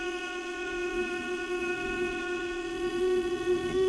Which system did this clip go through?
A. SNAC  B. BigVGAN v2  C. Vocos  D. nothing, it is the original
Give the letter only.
C